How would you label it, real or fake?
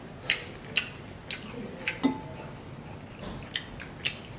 real